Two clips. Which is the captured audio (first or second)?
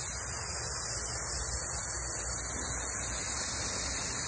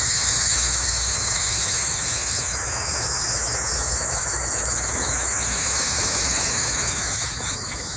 first